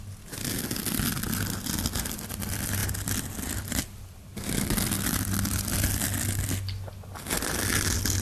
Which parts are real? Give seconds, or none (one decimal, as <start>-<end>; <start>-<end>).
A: 0.0-8.2

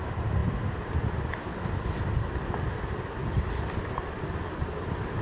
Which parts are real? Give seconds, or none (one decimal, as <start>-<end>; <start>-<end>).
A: 0.0-5.2

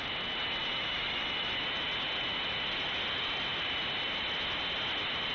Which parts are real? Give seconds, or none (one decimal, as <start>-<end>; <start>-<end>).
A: 0.0-0.6; 1.4-5.3